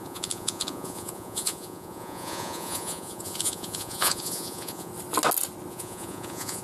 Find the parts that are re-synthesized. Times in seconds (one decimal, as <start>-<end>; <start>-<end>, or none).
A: 0.0-4.9; 5.7-6.6

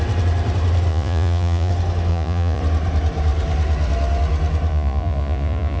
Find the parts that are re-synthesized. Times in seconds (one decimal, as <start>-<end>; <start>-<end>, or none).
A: 0.9-1.7; 2.1-2.6; 4.7-5.8

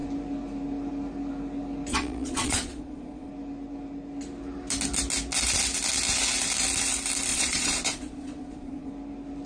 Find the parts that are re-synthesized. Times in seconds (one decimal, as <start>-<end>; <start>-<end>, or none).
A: 1.9-3.3; 7.3-8.9

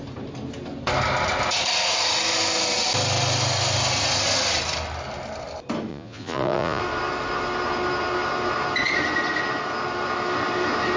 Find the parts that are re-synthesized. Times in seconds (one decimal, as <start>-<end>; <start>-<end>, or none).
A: 5.9-6.8